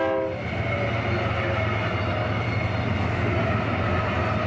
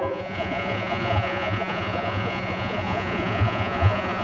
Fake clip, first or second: second